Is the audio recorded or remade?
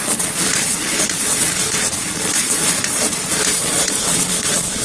remade